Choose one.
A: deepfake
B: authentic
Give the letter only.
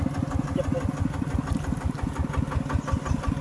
B